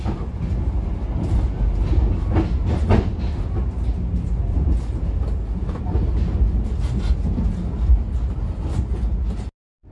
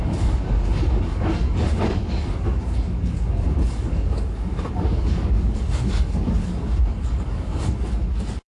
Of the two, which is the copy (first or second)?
second